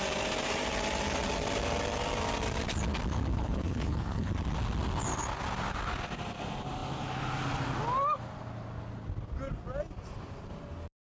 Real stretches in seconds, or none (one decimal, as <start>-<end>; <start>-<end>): 0.0-3.3; 4.3-11.1